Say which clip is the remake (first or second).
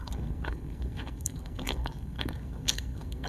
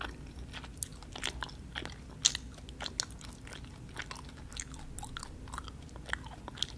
first